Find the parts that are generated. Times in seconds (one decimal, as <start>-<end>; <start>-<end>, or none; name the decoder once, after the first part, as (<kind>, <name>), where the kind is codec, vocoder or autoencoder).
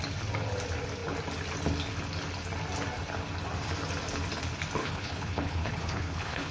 4.8-6.5 (codec, HILCodec)